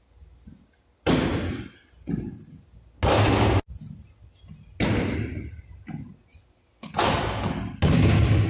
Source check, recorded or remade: recorded